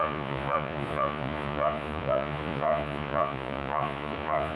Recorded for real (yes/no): no